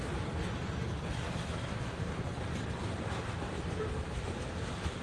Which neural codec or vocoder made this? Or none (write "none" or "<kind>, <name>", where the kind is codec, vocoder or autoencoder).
none